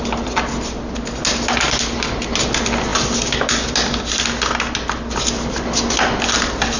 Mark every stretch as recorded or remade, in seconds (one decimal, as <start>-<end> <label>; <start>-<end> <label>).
0.0-6.8 recorded